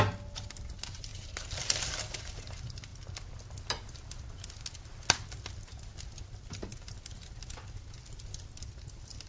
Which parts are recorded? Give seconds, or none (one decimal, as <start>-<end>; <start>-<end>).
0.0-9.3